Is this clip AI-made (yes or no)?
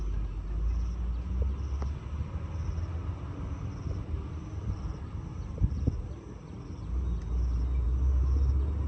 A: no